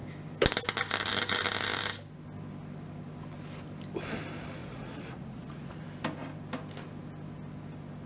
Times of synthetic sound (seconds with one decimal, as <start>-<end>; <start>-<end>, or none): 4.6-5.8